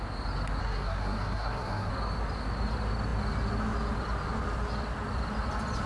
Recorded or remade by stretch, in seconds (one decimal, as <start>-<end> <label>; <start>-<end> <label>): 0.0-0.6 recorded; 0.6-1.9 remade; 1.9-5.9 recorded